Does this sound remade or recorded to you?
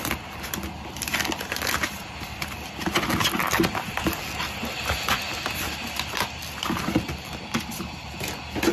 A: recorded